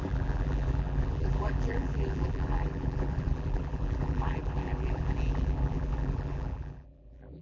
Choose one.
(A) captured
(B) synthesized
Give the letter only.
B